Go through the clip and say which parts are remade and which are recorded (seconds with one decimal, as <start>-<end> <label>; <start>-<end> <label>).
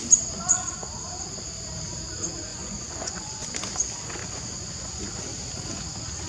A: 0.0-2.5 recorded; 2.5-3.5 remade; 3.5-4.2 recorded; 4.2-5.0 remade; 5.0-6.3 recorded